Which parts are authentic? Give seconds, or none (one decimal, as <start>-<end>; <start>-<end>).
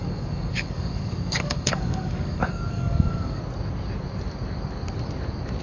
3.4-5.6